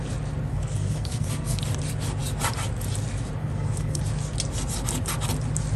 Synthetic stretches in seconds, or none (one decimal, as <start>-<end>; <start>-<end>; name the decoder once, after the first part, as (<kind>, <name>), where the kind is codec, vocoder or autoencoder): 0.5-1.6 (codec, SNAC); 3.4-4.0